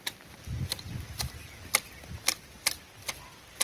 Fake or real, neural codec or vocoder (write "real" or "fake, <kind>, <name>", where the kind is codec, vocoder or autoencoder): real